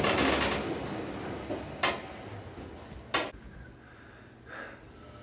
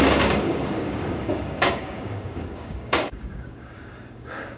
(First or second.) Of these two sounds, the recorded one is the first